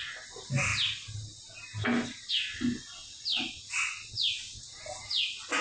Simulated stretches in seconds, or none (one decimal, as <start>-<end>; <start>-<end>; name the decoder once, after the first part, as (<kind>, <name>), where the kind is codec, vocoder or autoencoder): none